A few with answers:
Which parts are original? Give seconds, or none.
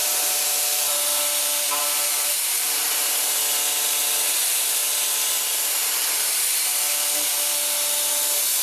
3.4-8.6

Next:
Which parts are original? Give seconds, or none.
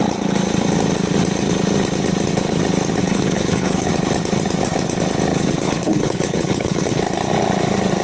0.0-3.0; 3.9-5.3; 7.0-8.0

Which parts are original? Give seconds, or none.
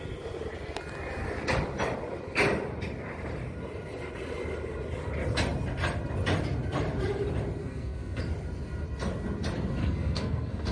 0.0-7.6; 8.2-9.8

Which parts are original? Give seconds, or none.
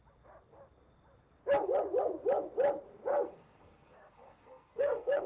0.0-3.1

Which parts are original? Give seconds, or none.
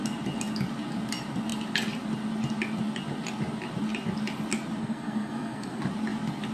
0.0-4.8; 5.8-6.5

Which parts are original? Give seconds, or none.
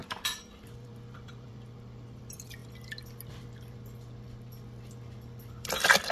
2.6-5.5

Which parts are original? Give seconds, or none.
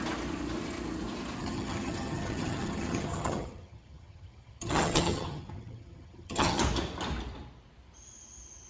0.0-1.4; 6.6-8.7